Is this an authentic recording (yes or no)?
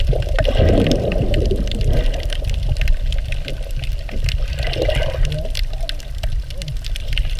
yes